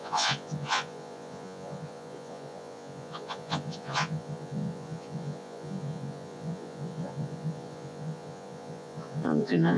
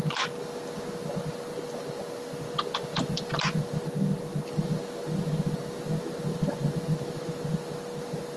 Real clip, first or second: second